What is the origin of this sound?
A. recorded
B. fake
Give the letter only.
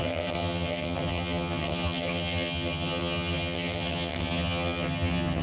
B